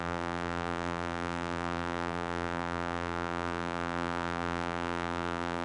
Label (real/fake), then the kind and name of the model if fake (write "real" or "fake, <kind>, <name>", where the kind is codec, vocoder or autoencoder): fake, vocoder, BigVGAN v2